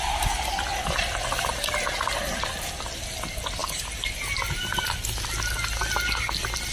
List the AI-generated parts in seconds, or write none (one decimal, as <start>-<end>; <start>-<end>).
0.7-1.2